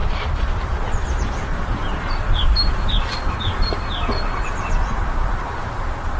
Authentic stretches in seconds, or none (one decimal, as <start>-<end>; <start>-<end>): 0.7-6.2